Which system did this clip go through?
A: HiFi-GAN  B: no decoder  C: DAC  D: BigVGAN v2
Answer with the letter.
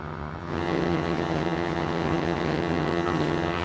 A